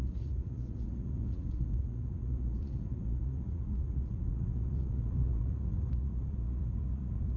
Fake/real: fake